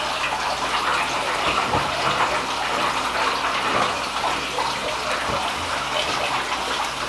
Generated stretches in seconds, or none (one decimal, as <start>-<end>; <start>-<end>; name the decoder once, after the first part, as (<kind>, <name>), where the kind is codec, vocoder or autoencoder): none